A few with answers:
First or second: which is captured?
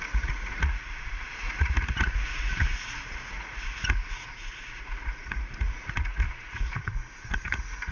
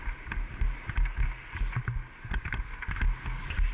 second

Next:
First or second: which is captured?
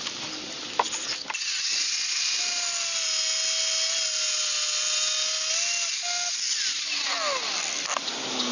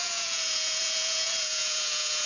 first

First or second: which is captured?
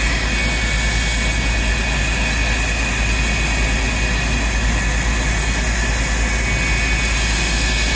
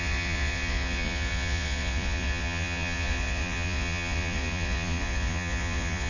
first